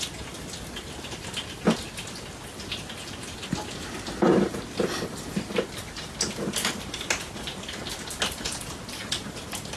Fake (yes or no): no